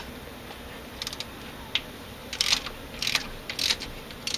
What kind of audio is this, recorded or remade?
recorded